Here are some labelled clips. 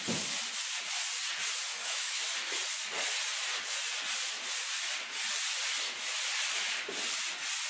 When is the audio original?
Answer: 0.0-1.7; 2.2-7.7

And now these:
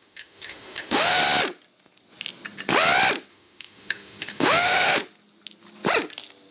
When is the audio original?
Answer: 1.2-3.3; 5.0-6.5